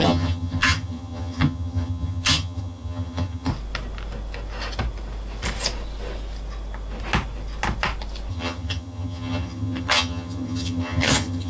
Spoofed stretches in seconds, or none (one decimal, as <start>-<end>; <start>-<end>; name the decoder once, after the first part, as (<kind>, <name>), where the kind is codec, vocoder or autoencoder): 0.0-3.5 (vocoder, HiFi-GAN); 8.3-11.5